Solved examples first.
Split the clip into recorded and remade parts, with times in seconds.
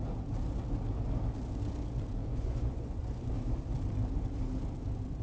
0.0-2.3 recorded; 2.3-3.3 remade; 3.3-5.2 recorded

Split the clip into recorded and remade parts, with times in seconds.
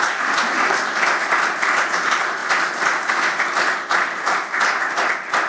0.0-5.5 recorded